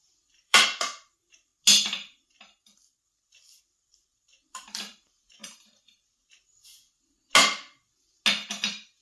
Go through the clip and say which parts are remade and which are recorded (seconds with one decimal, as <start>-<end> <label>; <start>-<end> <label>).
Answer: 0.0-1.5 remade; 1.5-3.6 recorded; 3.6-5.4 remade; 5.4-8.6 recorded; 8.6-9.0 remade